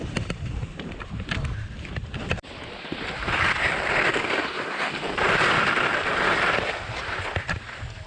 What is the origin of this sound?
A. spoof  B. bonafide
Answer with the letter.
A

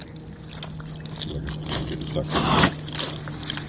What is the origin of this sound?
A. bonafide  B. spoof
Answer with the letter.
A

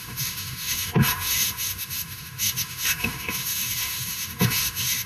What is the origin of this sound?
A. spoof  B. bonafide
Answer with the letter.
A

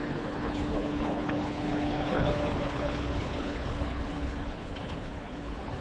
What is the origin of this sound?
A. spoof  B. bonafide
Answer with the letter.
A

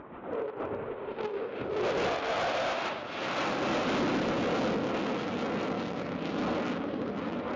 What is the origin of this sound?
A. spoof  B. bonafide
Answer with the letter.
B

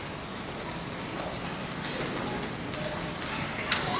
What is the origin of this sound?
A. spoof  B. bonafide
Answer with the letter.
B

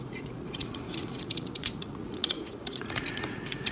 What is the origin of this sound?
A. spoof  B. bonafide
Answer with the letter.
A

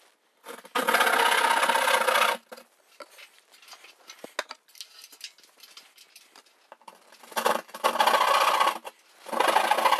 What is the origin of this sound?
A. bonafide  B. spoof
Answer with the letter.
A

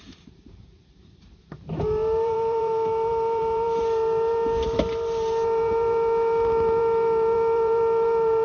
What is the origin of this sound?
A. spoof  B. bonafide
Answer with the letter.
A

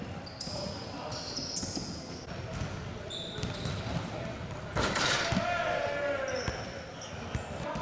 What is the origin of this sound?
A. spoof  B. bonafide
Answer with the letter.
B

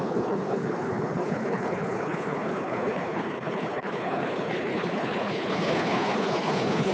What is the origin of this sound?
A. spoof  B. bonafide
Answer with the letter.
A